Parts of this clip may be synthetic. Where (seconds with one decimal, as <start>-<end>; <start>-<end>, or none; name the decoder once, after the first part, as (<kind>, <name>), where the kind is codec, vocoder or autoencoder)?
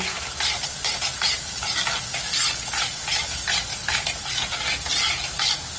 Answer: 1.1-1.9 (vocoder, BigVGAN v2); 3.7-4.3